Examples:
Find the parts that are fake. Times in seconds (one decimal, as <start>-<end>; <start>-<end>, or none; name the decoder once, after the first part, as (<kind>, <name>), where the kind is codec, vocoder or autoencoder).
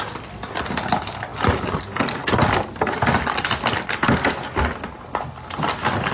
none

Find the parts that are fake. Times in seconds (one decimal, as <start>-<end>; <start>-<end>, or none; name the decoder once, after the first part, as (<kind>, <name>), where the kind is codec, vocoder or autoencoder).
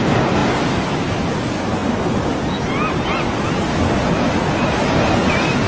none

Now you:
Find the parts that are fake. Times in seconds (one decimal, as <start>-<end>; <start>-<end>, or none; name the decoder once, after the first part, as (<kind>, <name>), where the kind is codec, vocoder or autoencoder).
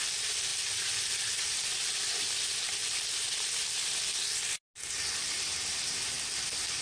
none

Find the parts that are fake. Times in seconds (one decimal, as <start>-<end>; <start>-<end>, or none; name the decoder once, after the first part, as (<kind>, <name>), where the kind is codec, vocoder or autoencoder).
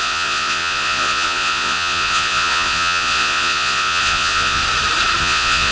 0.0-4.6 (vocoder, Vocos); 5.2-5.7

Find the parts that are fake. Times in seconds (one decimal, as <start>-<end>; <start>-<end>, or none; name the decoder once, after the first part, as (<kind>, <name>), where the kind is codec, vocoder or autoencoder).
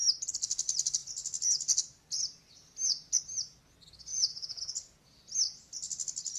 4.1-4.6 (vocoder, Vocos)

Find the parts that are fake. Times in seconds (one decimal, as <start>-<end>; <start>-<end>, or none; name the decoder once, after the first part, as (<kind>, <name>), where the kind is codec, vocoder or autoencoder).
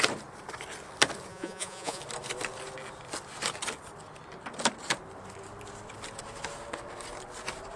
1.3-2.0 (vocoder, Vocos)